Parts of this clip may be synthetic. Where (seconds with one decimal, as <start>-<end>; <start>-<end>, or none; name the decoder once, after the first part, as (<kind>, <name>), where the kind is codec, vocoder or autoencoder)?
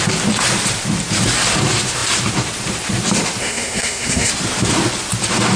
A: 3.4-4.3 (codec, SNAC)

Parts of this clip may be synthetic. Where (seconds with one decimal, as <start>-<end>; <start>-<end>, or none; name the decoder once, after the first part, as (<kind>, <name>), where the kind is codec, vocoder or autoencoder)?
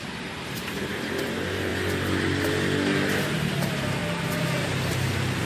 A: 0.0-1.7 (vocoder, BigVGAN v2); 3.3-4.0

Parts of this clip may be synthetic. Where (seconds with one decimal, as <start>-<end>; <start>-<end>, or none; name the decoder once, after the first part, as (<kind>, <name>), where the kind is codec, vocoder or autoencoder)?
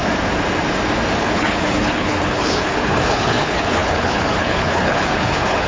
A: 1.2-5.7 (codec, HILCodec)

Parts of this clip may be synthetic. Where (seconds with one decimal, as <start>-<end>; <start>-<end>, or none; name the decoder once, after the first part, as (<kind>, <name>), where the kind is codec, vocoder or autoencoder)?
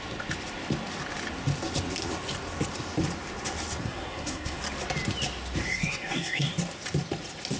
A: 3.8-4.6 (codec, SNAC); 5.6-6.5